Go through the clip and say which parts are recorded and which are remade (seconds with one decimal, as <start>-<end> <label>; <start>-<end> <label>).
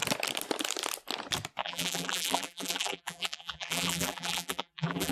0.0-1.6 recorded; 1.6-5.1 remade